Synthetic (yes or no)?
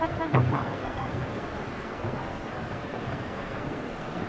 yes